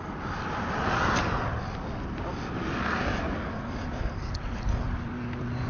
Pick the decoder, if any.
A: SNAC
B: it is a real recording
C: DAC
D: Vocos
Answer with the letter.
B